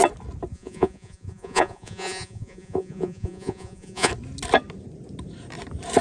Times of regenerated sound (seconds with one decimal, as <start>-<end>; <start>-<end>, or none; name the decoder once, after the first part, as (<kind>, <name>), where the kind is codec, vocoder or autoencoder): 0.5-4.1 (vocoder, Vocos)